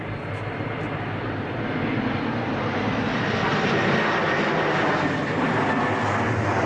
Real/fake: real